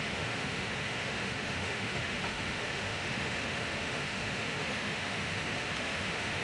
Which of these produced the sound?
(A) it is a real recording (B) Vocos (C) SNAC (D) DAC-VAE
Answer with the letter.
D